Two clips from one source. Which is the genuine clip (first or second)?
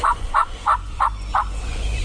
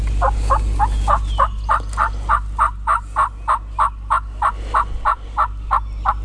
second